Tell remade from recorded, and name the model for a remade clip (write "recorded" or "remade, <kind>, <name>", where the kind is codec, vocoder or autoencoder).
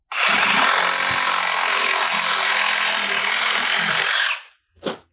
recorded